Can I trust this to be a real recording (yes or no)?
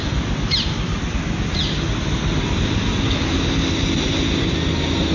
yes